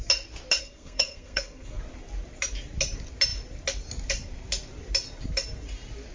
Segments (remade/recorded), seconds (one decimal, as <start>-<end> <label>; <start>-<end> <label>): 0.0-0.6 recorded; 0.6-1.8 remade; 1.8-6.1 recorded